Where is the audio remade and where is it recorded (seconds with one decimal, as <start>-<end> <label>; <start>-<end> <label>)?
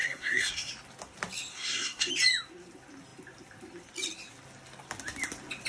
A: 0.0-0.7 remade; 0.7-1.5 recorded; 1.5-2.1 remade; 2.1-5.7 recorded